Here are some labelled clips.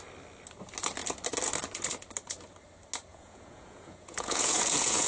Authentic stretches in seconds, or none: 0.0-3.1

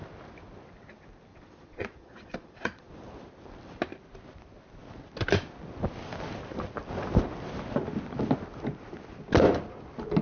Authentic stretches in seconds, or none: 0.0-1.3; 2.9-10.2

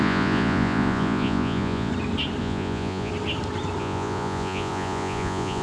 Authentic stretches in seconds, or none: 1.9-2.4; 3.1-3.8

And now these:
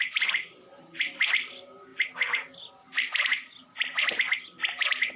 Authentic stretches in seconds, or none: 0.0-5.2